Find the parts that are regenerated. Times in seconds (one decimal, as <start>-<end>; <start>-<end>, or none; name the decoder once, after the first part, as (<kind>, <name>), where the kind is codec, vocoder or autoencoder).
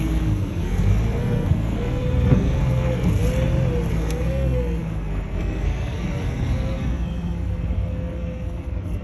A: 0.0-3.2 (codec, SNAC); 3.9-9.0